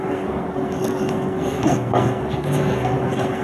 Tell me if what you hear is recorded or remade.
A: remade